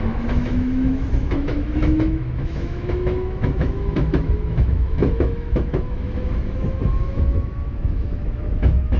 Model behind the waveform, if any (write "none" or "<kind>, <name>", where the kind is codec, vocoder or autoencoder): autoencoder, DAC-VAE